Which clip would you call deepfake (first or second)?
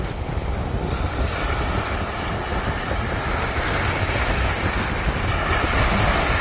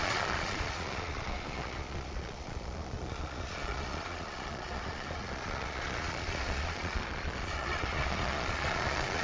second